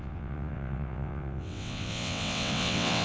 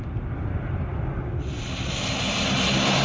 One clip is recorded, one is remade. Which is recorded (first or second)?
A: second